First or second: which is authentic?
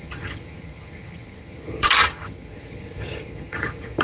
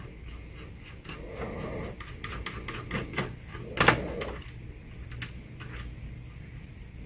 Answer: second